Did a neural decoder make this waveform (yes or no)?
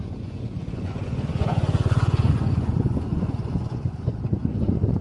yes